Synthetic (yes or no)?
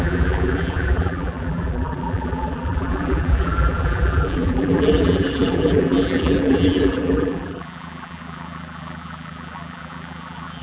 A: yes